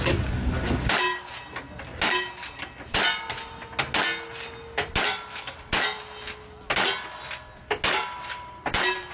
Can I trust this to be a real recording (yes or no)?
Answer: yes